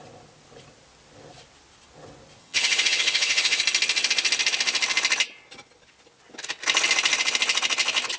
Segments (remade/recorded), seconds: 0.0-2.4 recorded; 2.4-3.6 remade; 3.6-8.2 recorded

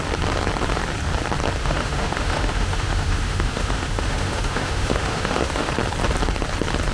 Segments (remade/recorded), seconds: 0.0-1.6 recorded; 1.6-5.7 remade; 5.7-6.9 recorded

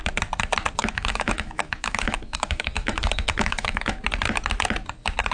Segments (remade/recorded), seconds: 0.0-0.8 recorded; 0.8-4.0 remade; 4.0-5.3 recorded

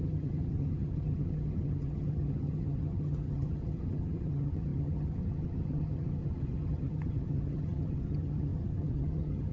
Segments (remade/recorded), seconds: 0.0-9.5 remade

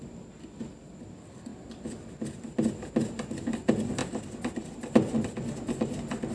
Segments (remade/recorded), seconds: 0.0-6.3 recorded

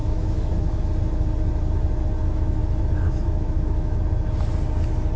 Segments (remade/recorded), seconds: 0.0-0.8 remade; 0.8-2.2 recorded; 2.2-4.0 remade; 4.0-5.2 recorded

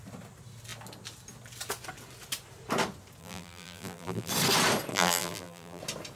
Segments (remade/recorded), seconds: 0.0-3.2 recorded; 3.2-4.3 remade; 4.3-4.9 recorded; 4.9-5.8 remade; 5.8-6.2 recorded

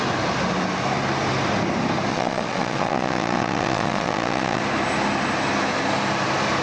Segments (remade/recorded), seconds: 0.0-2.1 recorded; 2.1-4.6 remade; 4.6-6.6 recorded